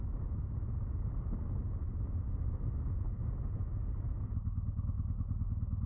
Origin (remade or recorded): recorded